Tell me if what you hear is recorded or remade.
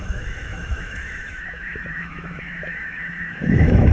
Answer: remade